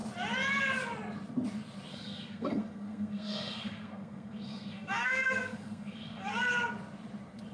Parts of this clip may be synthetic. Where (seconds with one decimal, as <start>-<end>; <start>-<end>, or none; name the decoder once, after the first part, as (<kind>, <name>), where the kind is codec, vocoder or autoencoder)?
1.9-6.4 (codec, SNAC)